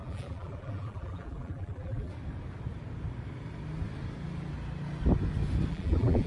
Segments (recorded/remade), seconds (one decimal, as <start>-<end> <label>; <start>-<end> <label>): 0.0-2.1 remade; 2.1-5.7 recorded; 5.7-6.3 remade